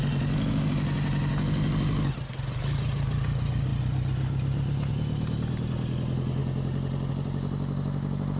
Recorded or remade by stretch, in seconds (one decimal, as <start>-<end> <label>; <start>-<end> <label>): 0.0-8.4 recorded